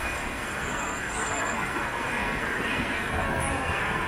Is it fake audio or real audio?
fake